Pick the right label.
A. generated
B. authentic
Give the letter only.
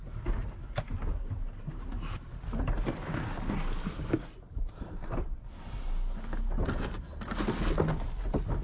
B